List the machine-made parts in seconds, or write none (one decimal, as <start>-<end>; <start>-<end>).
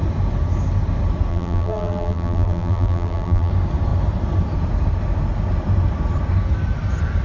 1.3-3.5